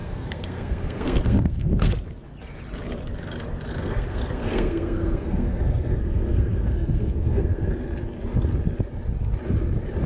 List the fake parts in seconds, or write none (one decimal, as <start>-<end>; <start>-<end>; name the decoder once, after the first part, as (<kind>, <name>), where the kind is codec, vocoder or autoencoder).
0.0-1.9 (codec, SNAC); 3.7-7.7